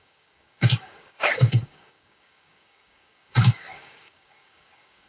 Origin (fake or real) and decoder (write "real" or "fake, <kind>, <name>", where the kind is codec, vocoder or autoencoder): fake, codec, DAC